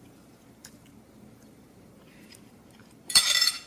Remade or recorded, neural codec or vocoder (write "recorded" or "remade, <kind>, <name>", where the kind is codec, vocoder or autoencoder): remade, vocoder, BigVGAN v2